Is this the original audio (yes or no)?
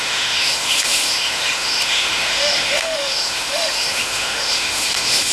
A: no